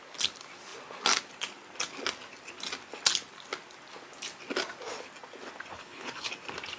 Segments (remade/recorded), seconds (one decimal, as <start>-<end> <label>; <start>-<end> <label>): 0.0-5.7 recorded; 5.7-6.3 remade; 6.3-6.8 recorded